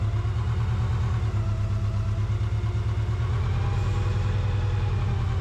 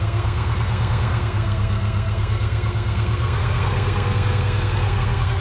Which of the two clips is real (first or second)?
first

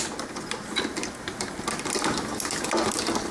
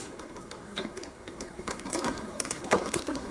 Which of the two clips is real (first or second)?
first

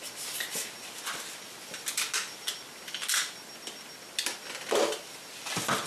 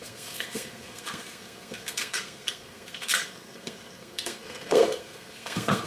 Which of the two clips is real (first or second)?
first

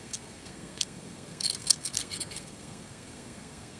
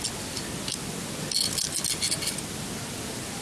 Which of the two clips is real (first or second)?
second